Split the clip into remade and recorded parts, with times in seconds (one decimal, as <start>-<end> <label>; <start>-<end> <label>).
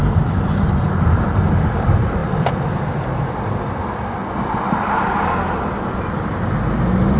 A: 0.0-0.8 remade; 0.8-2.2 recorded; 2.2-2.9 remade; 2.9-7.2 recorded